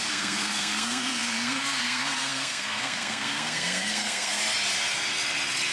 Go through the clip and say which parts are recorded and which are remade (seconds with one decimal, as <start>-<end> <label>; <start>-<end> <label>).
0.0-4.4 remade; 4.4-5.7 recorded